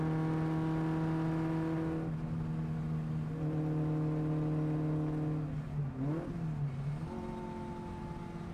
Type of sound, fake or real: real